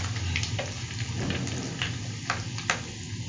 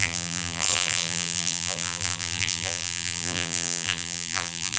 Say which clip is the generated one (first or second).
second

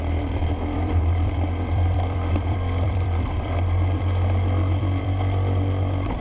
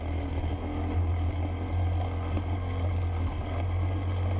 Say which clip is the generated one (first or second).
first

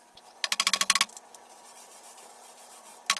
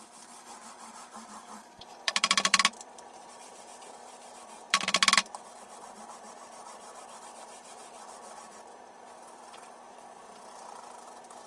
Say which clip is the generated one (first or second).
second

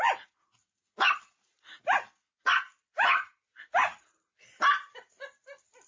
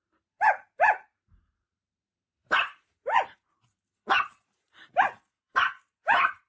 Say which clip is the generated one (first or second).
second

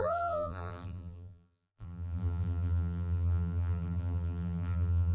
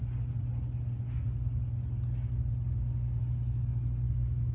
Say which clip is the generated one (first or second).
first